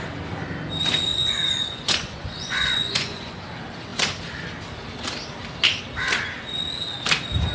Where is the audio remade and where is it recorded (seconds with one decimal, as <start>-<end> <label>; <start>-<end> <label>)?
0.0-1.1 recorded; 1.1-3.4 remade; 3.4-7.5 recorded